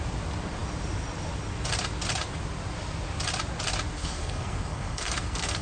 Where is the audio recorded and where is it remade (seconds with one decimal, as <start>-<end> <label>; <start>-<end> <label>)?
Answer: 0.0-4.0 recorded; 4.0-5.6 remade